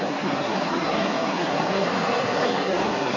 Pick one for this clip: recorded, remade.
remade